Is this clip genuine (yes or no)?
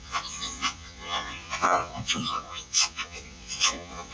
no